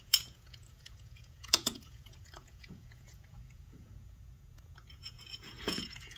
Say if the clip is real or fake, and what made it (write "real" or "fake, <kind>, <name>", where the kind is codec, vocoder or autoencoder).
fake, vocoder, Vocos